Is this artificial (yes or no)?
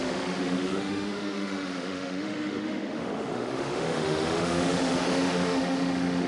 yes